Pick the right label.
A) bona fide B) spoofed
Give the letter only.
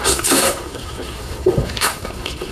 B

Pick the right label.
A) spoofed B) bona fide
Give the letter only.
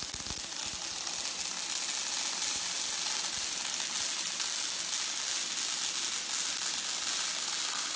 B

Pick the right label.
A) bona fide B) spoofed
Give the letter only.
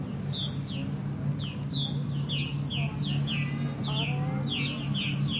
A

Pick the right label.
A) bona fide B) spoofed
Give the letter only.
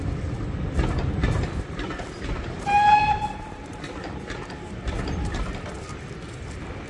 A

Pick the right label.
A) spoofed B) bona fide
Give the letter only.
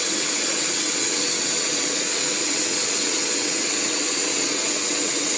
A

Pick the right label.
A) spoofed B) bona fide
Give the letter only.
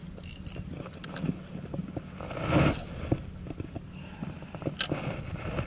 B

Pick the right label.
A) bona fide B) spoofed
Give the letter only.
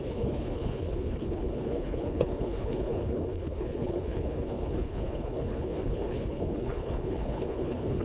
B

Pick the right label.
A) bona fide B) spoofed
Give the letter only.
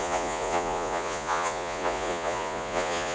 B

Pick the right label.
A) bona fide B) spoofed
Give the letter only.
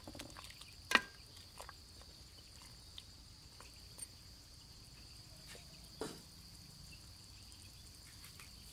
A